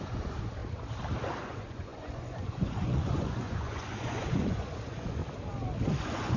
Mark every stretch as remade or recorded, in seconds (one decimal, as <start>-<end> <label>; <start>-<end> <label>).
0.0-0.6 remade; 0.6-1.4 recorded; 1.4-5.2 remade; 5.2-6.0 recorded; 6.0-6.4 remade